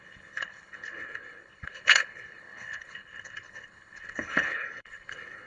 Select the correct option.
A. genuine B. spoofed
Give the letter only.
B